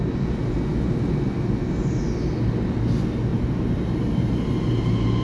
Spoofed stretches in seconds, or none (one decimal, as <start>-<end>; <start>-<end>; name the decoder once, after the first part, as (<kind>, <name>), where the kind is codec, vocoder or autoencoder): 3.3-4.3 (vocoder, BigVGAN v2)